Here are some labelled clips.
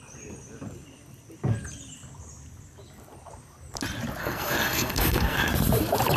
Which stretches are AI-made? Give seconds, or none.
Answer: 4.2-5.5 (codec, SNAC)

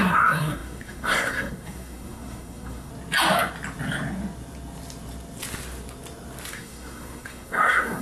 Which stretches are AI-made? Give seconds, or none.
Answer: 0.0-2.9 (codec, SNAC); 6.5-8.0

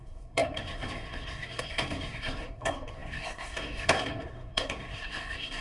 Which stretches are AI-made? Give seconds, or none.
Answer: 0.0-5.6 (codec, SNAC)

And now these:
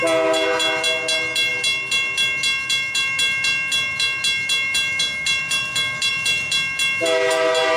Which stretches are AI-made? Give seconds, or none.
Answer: none

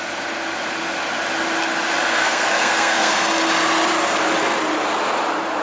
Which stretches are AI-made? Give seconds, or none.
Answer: 2.1-3.1 (codec, SNAC)

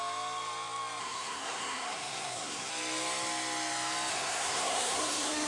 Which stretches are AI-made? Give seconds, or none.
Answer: 1.0-2.7 (codec, SNAC); 4.1-5.5